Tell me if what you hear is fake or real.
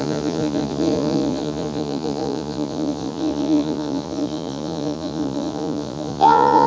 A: fake